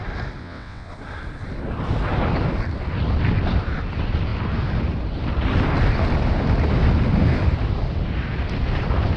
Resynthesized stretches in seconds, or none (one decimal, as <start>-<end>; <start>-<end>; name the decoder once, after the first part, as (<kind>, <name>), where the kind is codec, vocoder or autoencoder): 0.4-0.9 (vocoder, WaveNeXt)